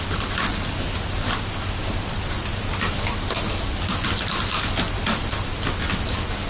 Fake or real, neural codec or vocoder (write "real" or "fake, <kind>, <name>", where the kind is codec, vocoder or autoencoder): real